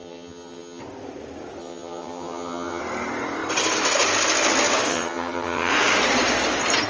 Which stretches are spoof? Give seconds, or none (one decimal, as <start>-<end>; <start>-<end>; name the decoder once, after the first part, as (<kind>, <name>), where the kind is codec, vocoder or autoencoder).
0.0-0.8 (vocoder, HiFi-GAN); 1.6-2.8; 4.9-5.7